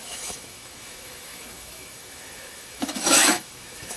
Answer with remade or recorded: remade